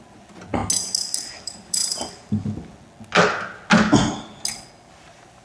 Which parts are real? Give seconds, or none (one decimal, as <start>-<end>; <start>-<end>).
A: 0.6-1.3; 1.8-5.0